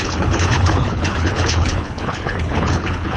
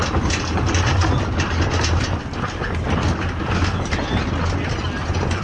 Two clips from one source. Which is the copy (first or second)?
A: first